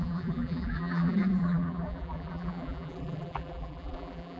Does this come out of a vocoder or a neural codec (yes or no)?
yes